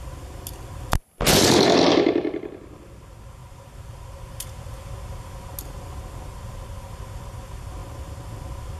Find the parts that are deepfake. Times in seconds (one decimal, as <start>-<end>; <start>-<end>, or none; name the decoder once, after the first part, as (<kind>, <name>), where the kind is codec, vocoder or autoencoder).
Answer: none